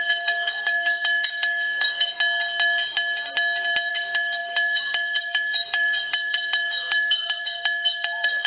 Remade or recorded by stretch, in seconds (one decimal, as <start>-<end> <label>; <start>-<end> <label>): 0.0-2.1 remade; 2.1-3.9 recorded; 3.9-8.5 remade